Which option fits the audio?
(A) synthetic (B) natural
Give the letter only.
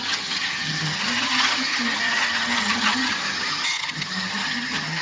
A